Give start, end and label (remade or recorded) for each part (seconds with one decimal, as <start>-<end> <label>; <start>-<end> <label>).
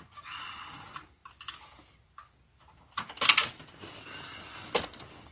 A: 0.0-5.3 recorded